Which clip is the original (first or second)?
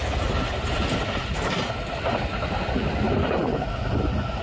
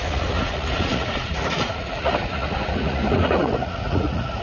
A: first